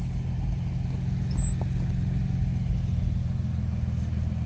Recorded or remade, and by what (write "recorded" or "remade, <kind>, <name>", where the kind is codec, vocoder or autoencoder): recorded